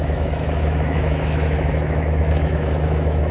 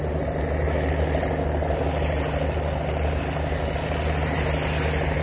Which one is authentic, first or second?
second